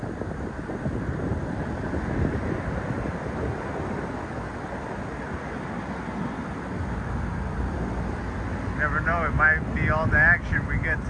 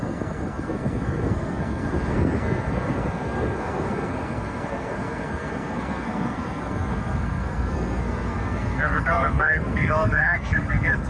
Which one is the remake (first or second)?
second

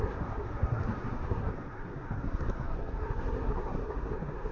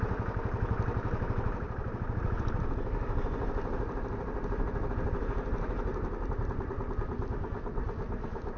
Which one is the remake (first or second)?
first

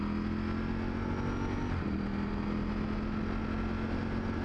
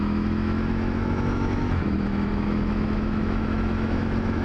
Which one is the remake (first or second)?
second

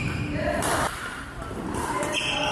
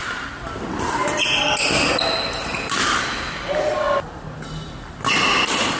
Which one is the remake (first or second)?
first